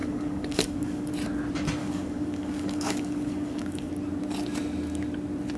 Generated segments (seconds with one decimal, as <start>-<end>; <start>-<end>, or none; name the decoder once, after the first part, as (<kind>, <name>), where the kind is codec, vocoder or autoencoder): 0.0-1.1 (codec, DAC); 1.8-3.9